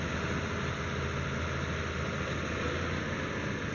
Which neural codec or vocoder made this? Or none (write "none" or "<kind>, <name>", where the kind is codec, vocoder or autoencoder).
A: none